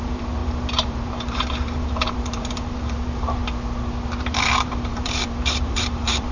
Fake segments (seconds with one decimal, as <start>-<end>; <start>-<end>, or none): 0.0-3.4; 4.2-6.3